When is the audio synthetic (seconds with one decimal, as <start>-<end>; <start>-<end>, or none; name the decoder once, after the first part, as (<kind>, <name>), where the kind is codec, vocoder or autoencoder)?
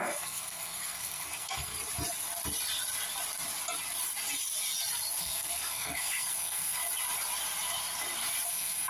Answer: 0.0-1.7 (codec, SNAC); 5.2-6.8; 8.5-8.9